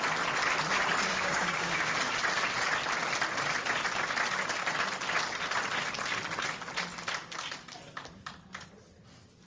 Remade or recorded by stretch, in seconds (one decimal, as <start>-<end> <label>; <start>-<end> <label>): 0.0-1.1 recorded; 1.1-1.9 remade; 1.9-9.5 recorded